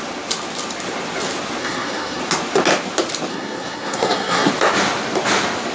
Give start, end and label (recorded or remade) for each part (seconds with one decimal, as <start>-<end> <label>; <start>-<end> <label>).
0.0-1.6 recorded; 1.6-2.2 remade; 2.2-3.3 recorded; 3.3-4.5 remade; 4.5-5.7 recorded